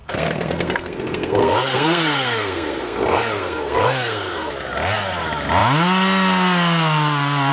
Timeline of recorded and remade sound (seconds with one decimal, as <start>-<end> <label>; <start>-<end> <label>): 0.0-4.5 remade; 4.5-7.5 recorded